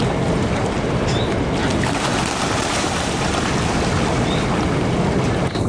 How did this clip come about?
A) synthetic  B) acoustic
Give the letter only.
B